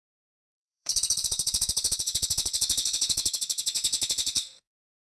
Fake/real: fake